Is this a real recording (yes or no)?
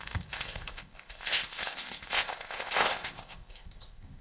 no